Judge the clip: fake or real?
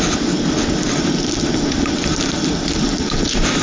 real